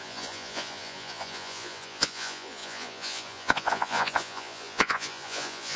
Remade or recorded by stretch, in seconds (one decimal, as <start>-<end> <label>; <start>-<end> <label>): 0.0-5.8 remade